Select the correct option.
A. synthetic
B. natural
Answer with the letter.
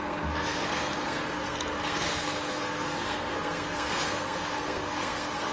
A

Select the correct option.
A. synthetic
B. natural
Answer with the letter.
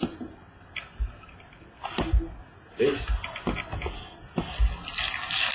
B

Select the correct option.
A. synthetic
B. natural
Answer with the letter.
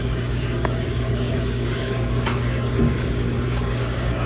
A